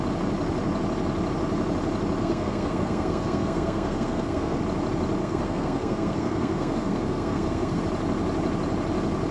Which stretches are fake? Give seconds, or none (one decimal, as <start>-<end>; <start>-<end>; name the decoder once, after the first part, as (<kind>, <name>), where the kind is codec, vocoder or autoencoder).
2.2-4.6 (codec, SNAC); 5.2-7.8